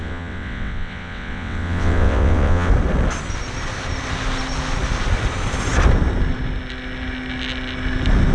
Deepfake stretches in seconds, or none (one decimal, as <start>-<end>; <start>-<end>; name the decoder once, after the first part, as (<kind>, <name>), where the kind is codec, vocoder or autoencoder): 0.0-2.7 (vocoder, WaveNeXt)